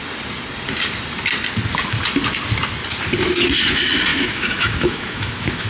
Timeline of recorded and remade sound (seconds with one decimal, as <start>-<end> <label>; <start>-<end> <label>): 0.0-4.1 recorded; 4.1-5.7 remade